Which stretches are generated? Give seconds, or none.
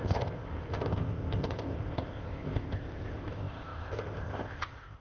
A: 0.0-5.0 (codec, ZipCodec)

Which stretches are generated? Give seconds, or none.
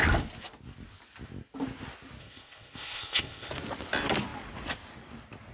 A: 2.2-3.5 (codec, ZipCodec)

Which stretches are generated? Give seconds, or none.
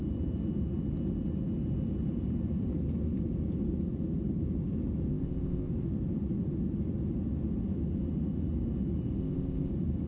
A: 5.1-5.7 (codec, ZipCodec); 9.2-9.7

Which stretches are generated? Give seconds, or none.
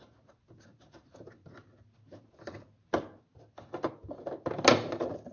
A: none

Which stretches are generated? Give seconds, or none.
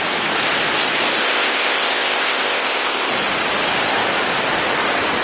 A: 1.2-3.1 (codec, ZipCodec)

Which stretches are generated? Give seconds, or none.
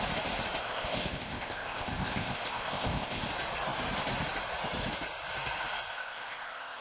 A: 0.6-3.2 (codec, ZipCodec); 5.9-6.8